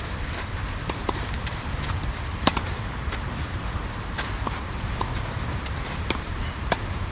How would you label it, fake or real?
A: fake